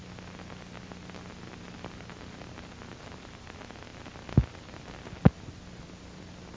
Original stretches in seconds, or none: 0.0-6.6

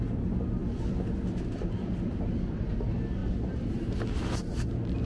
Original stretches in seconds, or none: 0.0-0.6; 2.7-5.0

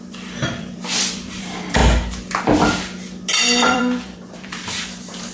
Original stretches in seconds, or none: 1.8-3.4